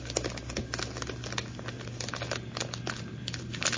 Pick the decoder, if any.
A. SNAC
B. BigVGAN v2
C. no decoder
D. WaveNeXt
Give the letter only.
C